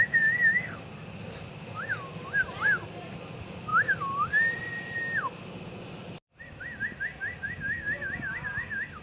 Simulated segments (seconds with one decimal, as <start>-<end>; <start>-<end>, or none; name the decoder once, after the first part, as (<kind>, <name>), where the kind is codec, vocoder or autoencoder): none